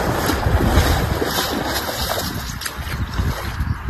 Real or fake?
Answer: real